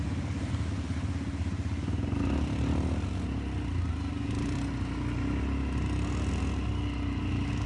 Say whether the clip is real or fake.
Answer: real